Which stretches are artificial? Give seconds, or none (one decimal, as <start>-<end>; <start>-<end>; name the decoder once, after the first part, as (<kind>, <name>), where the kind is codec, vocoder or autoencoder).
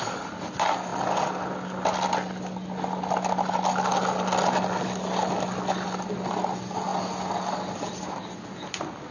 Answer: none